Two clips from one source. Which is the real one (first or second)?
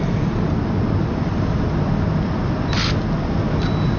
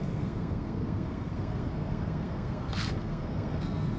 first